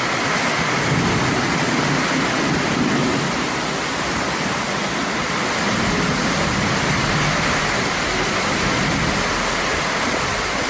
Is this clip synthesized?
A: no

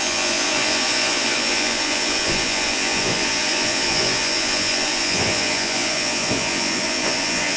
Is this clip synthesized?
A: yes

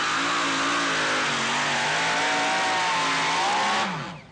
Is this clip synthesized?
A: no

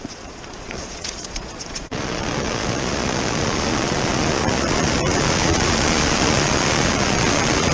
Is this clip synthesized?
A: yes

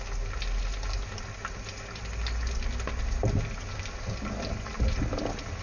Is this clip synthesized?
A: no